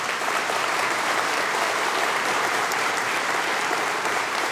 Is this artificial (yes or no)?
yes